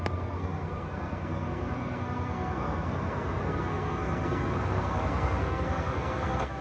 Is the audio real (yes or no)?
no